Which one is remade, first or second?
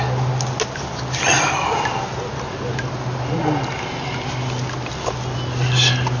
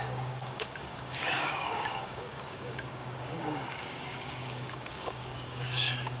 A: second